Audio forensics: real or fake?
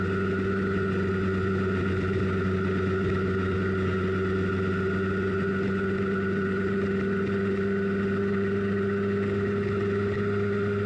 real